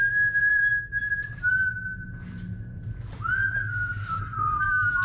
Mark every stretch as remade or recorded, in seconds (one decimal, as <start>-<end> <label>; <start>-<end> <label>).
0.0-3.7 recorded; 3.7-4.2 remade; 4.2-5.0 recorded